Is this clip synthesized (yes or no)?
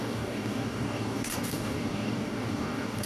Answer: yes